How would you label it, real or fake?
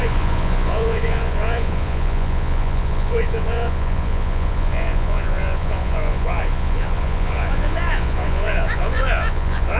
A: fake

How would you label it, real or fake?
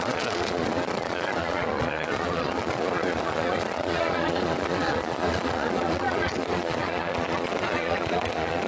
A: fake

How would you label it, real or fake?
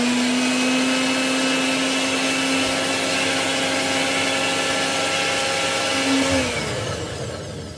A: real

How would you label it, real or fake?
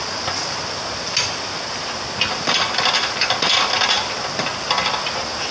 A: real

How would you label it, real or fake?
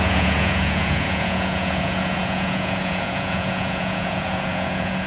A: fake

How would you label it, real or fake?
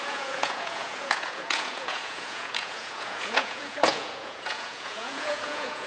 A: fake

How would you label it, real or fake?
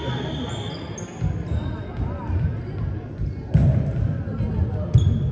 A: real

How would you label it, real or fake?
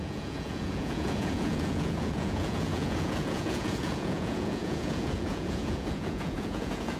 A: fake